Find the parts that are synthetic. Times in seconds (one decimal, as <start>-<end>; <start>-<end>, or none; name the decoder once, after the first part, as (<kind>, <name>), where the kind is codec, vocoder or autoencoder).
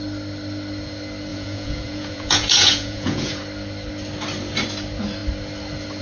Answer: 1.3-3.4 (vocoder, Vocos)